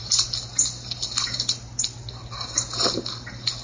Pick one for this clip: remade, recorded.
recorded